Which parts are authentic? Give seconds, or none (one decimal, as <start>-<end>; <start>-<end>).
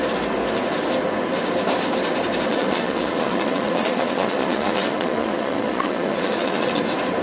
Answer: 0.0-2.5; 6.8-7.2